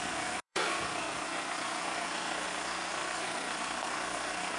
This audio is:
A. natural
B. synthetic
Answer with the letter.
B